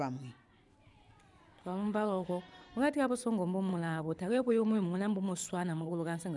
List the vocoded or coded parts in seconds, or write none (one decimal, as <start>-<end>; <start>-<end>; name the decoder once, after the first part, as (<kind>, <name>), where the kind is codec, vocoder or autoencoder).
1.6-2.3 (codec, HILCodec); 3.7-5.9